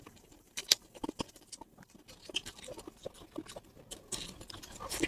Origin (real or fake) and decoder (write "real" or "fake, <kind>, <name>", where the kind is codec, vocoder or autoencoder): real